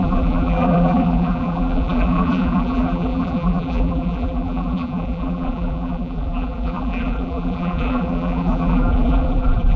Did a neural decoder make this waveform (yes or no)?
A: yes